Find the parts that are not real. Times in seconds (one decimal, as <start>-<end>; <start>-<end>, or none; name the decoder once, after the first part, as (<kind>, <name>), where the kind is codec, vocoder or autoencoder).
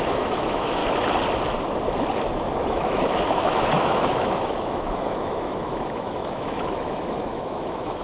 0.0-0.8 (autoencoder, DAC-VAE); 2.7-8.0